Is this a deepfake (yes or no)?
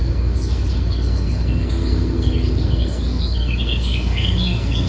yes